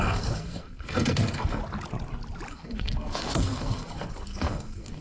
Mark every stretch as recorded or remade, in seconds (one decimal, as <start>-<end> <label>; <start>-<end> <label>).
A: 0.0-1.6 remade; 1.6-2.5 recorded; 2.5-5.0 remade